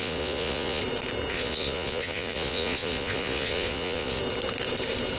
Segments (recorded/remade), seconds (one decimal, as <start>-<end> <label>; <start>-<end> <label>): 0.0-0.8 remade; 0.8-1.3 recorded; 1.3-4.2 remade; 4.2-5.2 recorded

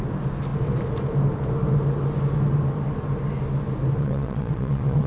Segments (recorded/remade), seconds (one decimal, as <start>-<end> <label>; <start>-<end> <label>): 0.0-4.0 recorded; 4.0-5.1 remade